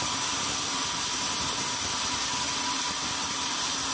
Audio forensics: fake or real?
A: real